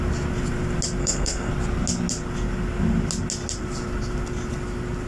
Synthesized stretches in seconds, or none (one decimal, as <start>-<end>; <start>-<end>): 1.0-1.5